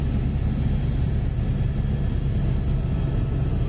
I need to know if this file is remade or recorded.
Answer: recorded